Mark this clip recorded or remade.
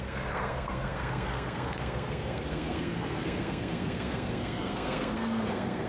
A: remade